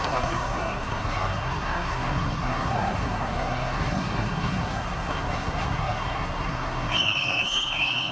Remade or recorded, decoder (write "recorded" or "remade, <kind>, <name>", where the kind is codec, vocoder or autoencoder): remade, codec, SNAC